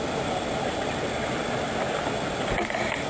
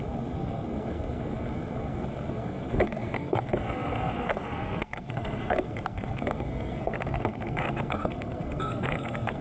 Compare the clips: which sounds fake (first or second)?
second